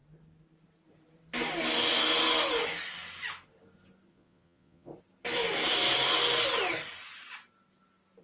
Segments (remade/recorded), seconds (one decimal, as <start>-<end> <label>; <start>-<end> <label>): 0.0-4.1 recorded; 4.1-4.9 remade; 4.9-8.2 recorded